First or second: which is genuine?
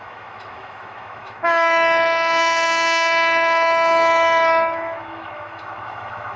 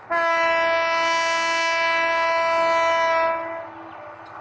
second